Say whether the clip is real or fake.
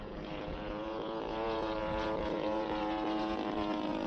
fake